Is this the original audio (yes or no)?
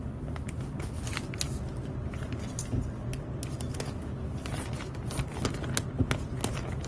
yes